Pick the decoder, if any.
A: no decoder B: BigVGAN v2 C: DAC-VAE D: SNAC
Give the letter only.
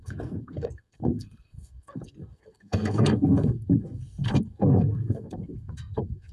D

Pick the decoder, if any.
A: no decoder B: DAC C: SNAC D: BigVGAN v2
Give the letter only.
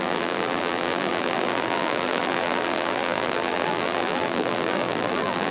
D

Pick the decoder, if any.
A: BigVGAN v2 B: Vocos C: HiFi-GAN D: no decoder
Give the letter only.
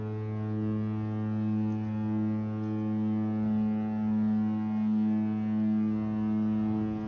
D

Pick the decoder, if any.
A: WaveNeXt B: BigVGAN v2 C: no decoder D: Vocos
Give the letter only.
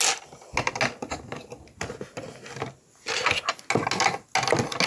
C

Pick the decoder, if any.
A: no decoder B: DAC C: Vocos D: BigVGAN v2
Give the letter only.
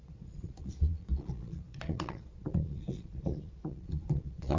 C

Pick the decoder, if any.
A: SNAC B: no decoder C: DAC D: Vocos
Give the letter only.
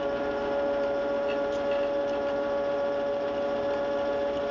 B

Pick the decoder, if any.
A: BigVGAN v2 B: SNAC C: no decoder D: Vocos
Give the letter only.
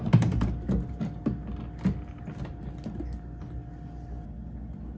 C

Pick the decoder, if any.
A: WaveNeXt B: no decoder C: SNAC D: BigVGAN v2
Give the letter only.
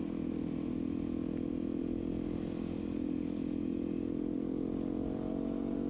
B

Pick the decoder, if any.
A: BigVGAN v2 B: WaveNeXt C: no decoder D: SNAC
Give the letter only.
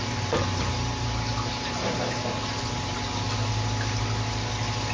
C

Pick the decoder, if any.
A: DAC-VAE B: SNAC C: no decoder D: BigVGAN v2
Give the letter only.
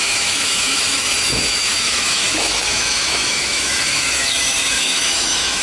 A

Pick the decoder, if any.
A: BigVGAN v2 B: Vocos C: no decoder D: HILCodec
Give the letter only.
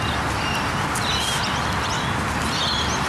C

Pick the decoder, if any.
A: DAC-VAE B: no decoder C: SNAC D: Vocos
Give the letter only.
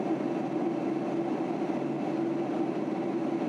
B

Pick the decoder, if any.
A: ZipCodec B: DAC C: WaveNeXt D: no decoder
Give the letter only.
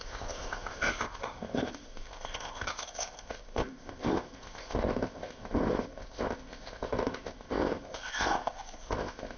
A